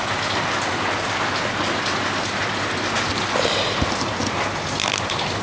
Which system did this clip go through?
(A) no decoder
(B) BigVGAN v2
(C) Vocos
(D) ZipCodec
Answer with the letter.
A